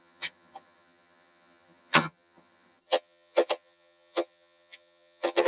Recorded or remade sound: remade